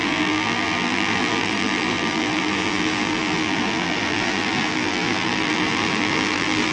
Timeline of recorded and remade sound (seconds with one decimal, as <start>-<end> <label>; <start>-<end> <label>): 0.0-6.7 remade